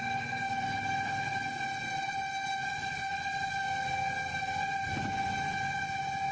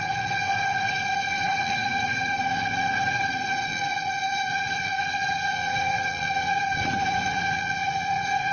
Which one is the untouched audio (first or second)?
first